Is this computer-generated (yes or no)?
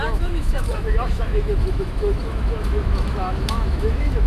yes